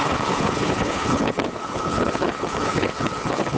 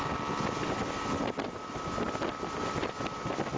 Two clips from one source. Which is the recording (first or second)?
second